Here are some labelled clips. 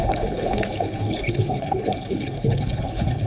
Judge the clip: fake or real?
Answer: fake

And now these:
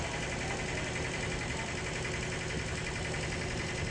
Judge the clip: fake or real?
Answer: real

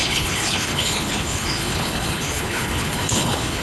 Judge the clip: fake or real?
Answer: fake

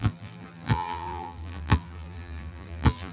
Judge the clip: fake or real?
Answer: fake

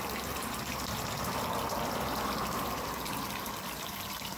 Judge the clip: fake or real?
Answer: real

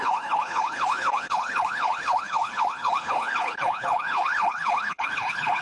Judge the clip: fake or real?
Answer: fake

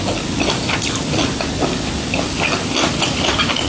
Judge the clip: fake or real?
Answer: real